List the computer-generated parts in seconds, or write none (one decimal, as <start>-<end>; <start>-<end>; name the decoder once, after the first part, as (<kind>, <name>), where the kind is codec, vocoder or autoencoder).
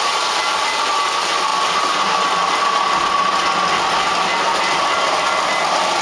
none